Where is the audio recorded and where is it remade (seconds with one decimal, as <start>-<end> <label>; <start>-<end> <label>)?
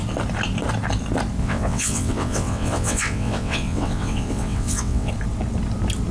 0.0-1.4 recorded; 1.4-5.1 remade; 5.1-6.1 recorded